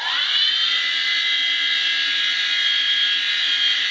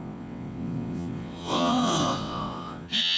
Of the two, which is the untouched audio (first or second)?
first